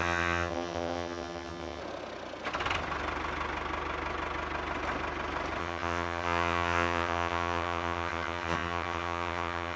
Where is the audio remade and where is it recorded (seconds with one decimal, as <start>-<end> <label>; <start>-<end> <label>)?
0.0-1.8 remade; 1.8-5.6 recorded; 5.6-9.8 remade